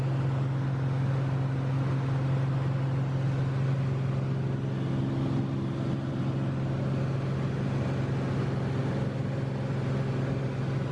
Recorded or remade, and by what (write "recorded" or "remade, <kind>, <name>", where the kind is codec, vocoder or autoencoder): recorded